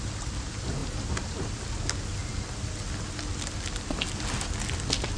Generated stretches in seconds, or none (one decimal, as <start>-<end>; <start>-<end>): none